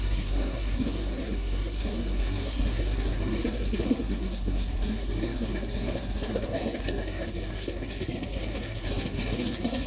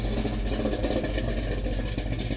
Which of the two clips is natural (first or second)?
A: second